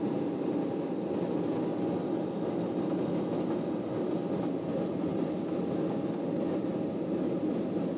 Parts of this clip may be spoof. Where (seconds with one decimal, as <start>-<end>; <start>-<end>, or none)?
0.0-1.7; 4.3-6.7; 7.4-8.0